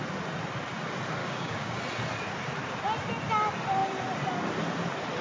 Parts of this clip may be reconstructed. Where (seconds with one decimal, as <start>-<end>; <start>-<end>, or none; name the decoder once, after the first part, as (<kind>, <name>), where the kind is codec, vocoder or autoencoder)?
1.2-1.8 (codec, DAC)

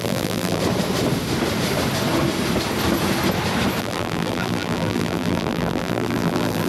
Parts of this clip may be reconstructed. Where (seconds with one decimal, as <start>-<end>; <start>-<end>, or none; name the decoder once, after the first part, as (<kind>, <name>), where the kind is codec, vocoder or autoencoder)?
0.0-0.6 (vocoder, BigVGAN v2); 3.8-6.7

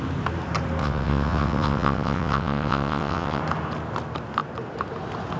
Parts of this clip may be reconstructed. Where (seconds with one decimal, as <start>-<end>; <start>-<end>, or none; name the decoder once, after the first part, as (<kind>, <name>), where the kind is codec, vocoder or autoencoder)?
0.8-3.4 (vocoder, WaveNeXt)

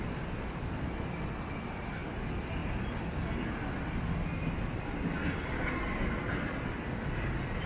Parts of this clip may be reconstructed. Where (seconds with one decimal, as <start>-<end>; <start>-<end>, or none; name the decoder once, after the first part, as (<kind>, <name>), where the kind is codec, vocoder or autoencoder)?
none

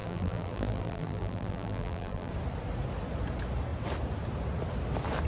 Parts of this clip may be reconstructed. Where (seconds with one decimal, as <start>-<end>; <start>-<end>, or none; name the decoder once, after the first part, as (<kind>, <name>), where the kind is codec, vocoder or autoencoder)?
0.0-2.3 (vocoder, BigVGAN v2)

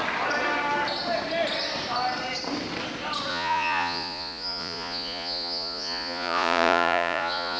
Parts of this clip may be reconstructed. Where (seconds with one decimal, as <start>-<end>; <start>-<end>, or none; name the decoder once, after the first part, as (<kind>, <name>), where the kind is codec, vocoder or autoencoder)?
3.3-7.6 (vocoder, Vocos)